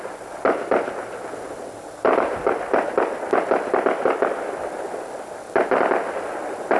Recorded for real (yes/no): yes